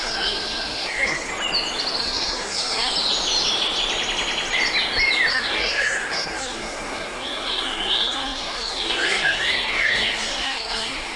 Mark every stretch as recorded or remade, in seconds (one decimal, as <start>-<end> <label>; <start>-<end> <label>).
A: 0.0-1.3 remade; 1.3-2.0 recorded; 2.0-2.9 remade; 2.9-5.3 recorded; 5.3-11.2 remade